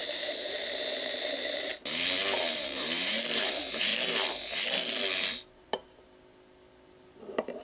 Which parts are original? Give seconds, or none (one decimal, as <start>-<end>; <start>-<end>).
1.7-2.5; 3.9-7.6